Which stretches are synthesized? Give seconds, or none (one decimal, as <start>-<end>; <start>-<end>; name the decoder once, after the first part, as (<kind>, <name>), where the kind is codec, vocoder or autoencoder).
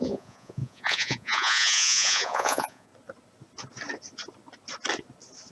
0.0-2.9 (vocoder, Vocos)